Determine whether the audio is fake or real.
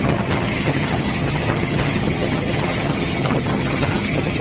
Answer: fake